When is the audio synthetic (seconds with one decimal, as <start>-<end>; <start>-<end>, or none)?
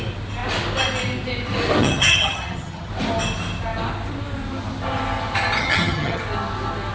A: 1.8-2.9; 5.6-6.2